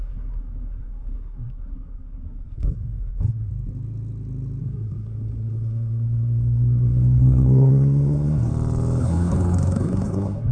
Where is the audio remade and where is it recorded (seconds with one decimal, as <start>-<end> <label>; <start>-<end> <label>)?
0.0-3.5 remade; 3.5-4.6 recorded; 4.6-8.5 remade; 8.5-9.0 recorded; 9.0-10.5 remade